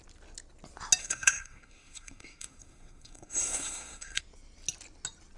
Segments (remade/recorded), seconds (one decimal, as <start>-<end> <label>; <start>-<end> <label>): 0.0-1.0 recorded; 1.0-4.2 remade; 4.2-5.4 recorded